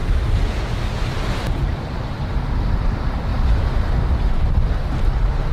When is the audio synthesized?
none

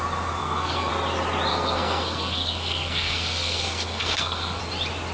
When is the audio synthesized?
0.4-0.9 (codec, SNAC); 1.5-4.6

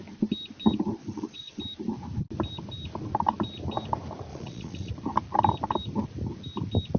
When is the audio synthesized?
1.0-1.6 (vocoder, Vocos); 4.3-4.9